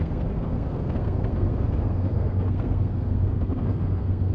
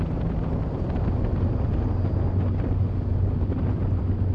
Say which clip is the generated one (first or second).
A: first